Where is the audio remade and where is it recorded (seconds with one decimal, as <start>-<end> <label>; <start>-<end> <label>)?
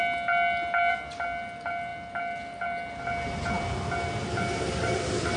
0.0-5.4 recorded